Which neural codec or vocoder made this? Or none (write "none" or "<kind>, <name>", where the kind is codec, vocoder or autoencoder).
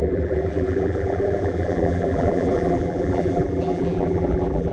vocoder, BigVGAN v2